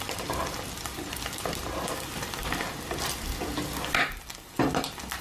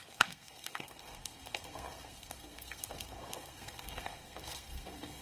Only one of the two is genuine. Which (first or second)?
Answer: first